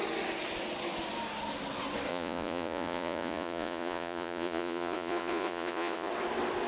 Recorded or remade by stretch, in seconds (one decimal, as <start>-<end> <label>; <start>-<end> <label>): 0.0-2.1 recorded; 2.1-6.1 remade; 6.1-6.7 recorded